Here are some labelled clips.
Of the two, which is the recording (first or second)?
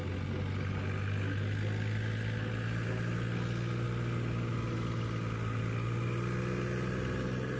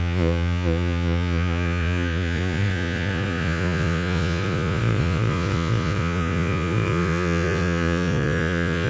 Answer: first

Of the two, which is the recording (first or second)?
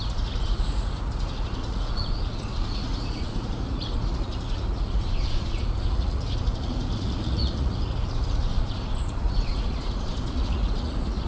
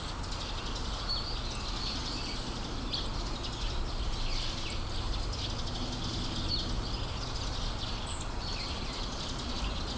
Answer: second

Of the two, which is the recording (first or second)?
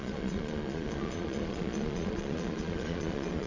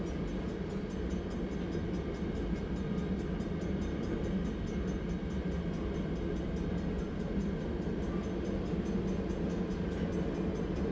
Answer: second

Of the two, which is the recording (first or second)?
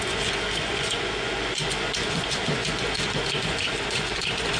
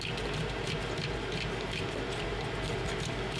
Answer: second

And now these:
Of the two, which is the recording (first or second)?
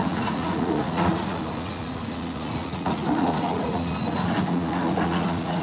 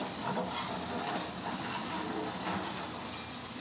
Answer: second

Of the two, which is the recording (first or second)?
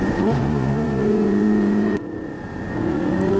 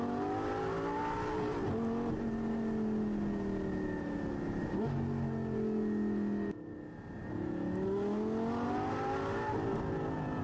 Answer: second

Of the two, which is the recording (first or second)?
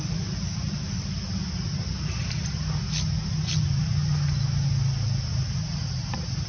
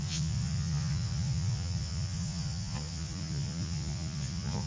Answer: first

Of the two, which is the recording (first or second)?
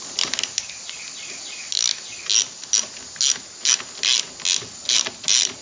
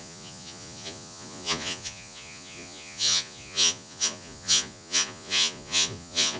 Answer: first